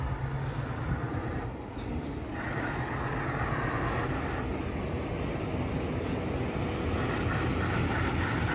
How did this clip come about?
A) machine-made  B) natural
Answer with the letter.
B